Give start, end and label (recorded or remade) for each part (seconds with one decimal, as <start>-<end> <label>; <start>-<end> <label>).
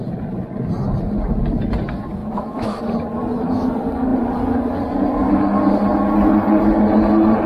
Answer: 0.0-2.2 recorded; 2.2-2.8 remade; 2.8-7.5 recorded